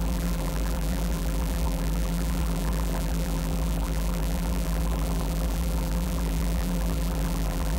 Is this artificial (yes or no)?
yes